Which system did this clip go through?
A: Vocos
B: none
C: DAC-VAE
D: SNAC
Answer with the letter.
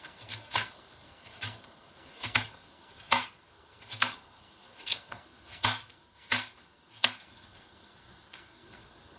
D